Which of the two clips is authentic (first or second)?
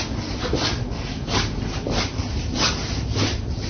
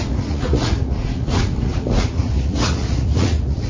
first